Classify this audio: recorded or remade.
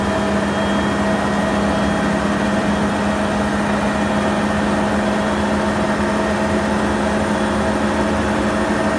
recorded